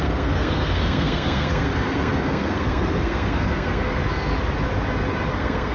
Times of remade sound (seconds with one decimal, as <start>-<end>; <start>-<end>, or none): 0.0-4.0; 5.3-5.7